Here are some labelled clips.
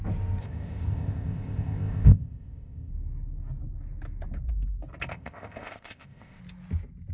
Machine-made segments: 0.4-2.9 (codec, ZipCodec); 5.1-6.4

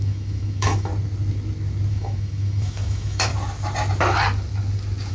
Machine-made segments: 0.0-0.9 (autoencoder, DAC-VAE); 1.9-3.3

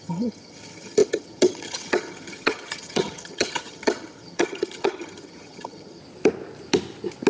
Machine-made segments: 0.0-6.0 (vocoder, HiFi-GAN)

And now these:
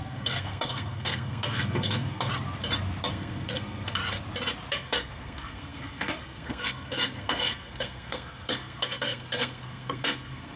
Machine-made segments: 0.0-2.3 (codec, SNAC); 3.1-4.0; 4.7-10.6

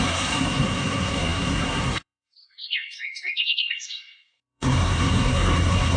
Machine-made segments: 0.0-6.0 (codec, SNAC)

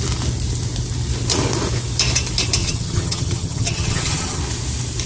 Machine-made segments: 2.6-4.4 (vocoder, HiFi-GAN)

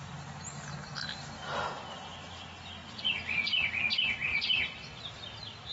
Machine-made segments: 4.3-5.0 (vocoder, BigVGAN v2)

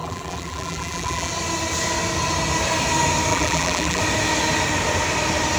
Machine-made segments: 0.0-1.3 (vocoder, BigVGAN v2); 3.3-4.0